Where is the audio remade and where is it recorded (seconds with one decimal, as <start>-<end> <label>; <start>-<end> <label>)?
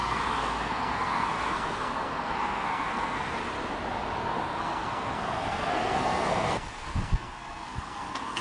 0.0-3.4 remade; 3.4-4.2 recorded; 4.2-8.4 remade